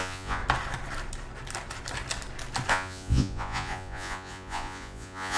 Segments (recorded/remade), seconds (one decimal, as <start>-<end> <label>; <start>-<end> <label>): 0.0-0.4 remade; 0.4-2.7 recorded; 2.7-5.4 remade